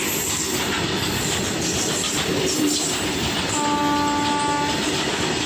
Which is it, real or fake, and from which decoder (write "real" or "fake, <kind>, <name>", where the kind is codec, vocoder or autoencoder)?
real